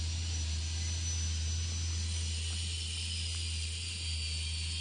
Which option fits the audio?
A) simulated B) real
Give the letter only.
B